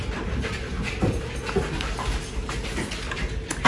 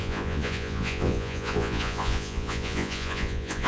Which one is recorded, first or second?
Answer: first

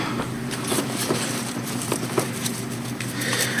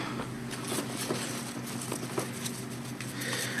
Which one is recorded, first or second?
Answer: second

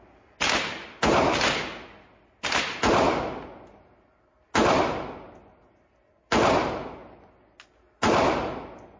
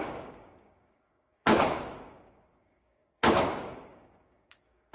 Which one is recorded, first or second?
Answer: first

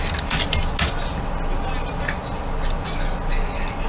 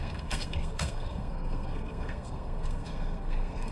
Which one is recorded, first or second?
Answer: first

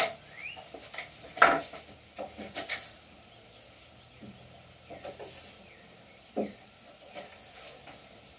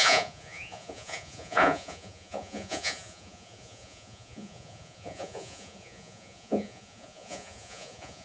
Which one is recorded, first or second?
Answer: first